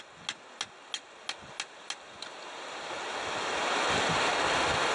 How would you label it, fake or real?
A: real